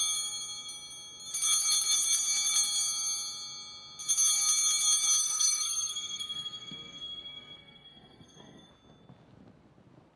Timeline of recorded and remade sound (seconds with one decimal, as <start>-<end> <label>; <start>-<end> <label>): 0.0-5.2 recorded; 5.2-8.7 remade; 8.7-10.2 recorded